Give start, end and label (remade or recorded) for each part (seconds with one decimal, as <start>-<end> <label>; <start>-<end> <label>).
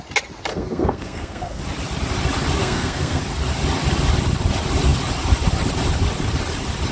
0.0-0.5 recorded; 0.5-1.6 remade; 1.6-2.6 recorded; 2.6-3.2 remade; 3.2-6.9 recorded